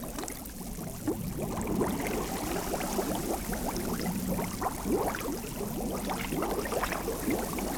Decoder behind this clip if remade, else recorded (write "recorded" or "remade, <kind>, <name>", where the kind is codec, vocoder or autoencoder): recorded